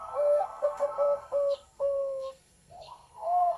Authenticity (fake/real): fake